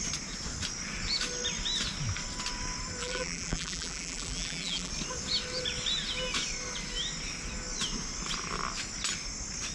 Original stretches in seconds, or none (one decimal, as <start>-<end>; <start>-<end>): 0.0-3.0; 4.9-9.7